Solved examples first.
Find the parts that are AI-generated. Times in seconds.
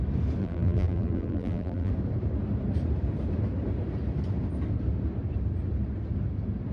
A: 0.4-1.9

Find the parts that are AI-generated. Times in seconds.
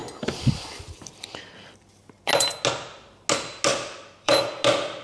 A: 0.0-2.0; 3.7-4.4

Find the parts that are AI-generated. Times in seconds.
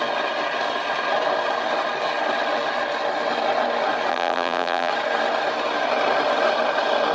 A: 4.1-4.9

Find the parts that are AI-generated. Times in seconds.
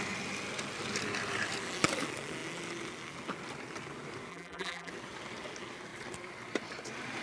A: 4.3-4.9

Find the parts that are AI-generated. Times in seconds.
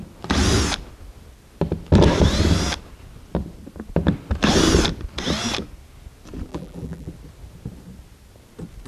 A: 6.5-7.1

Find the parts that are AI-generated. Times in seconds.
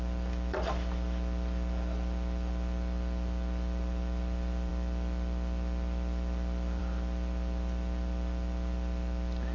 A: none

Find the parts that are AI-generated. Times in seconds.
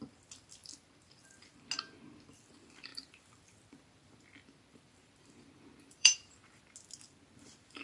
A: 0.6-1.3; 2.9-6.6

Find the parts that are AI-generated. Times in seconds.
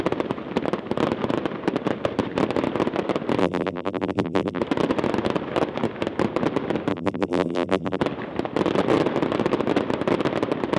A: 3.4-4.6; 6.9-8.0